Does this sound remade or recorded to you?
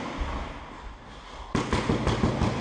recorded